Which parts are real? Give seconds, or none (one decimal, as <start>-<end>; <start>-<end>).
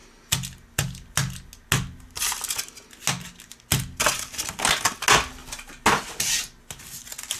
0.0-7.4